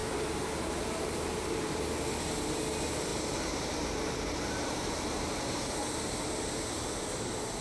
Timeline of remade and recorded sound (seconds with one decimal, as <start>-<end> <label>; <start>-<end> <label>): 0.0-1.8 remade; 1.8-3.1 recorded; 3.1-5.8 remade; 5.8-7.6 recorded